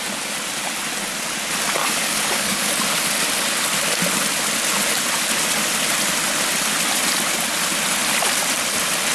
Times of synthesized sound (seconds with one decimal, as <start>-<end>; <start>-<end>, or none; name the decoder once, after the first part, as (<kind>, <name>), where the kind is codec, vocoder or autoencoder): 1.8-2.7 (codec, DAC)